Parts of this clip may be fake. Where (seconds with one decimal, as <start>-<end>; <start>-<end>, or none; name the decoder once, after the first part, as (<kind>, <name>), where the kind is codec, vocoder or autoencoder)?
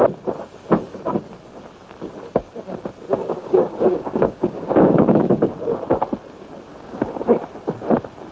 3.2-5.5 (codec, DAC); 6.7-7.4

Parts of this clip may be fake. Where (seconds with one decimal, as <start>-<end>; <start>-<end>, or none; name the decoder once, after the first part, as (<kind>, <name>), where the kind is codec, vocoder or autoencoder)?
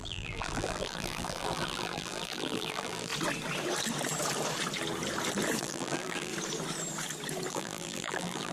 0.0-3.1 (vocoder, BigVGAN v2); 5.6-6.3; 7.5-8.5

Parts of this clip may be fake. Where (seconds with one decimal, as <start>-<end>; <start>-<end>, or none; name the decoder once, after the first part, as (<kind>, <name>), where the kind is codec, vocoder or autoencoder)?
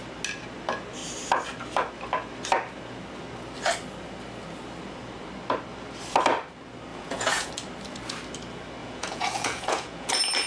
6.9-7.5 (vocoder, Vocos); 8.8-10.1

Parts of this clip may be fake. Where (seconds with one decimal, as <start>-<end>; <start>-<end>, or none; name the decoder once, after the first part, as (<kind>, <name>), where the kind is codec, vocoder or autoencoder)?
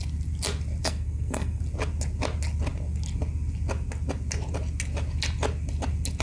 0.8-1.6 (codec, SNAC)